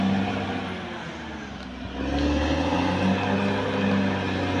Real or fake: real